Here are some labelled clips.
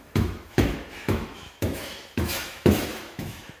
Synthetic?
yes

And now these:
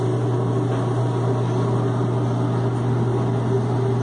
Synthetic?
no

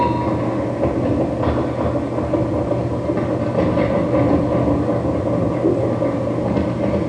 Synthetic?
no